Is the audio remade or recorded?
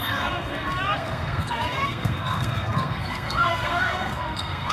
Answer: remade